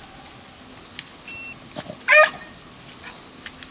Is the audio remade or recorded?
recorded